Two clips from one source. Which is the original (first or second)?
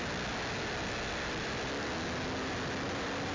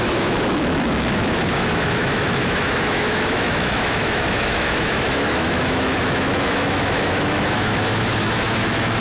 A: first